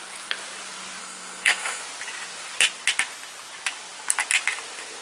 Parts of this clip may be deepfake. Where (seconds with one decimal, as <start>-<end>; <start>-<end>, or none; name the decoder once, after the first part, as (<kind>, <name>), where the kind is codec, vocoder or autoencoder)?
1.0-1.8 (codec, SNAC)